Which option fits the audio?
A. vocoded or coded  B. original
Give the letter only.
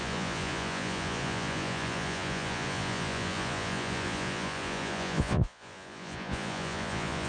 A